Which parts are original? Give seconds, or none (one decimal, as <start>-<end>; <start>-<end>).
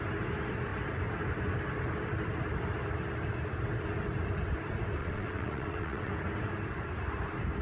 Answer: 0.0-5.0; 6.1-7.6